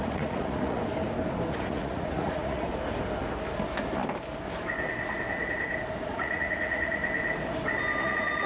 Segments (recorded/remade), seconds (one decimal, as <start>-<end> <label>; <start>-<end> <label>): 0.0-0.8 remade; 0.8-1.5 recorded; 1.5-2.7 remade; 2.7-6.0 recorded; 6.0-7.0 remade; 7.0-8.0 recorded; 8.0-8.5 remade